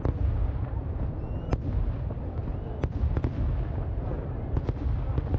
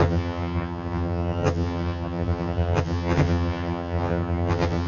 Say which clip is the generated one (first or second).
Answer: second